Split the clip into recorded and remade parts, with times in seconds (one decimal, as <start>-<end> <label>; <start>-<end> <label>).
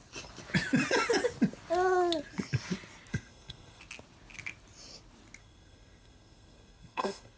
0.0-3.1 recorded; 3.1-3.8 remade; 3.8-5.4 recorded; 5.4-7.4 remade